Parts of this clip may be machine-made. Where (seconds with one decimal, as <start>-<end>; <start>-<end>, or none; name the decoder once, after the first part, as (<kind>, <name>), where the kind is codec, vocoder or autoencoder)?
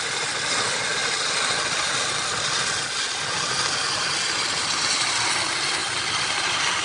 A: none